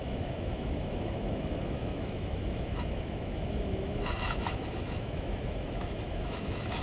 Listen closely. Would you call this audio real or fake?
fake